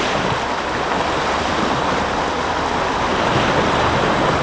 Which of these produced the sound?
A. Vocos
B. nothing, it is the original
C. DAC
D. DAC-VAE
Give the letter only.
B